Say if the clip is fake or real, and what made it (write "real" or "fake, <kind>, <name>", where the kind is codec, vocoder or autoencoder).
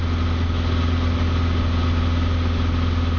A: real